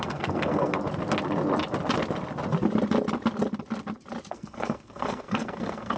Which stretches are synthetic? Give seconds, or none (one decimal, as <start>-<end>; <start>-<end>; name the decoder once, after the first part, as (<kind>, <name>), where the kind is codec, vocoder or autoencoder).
0.0-0.7 (codec, SNAC); 4.3-6.0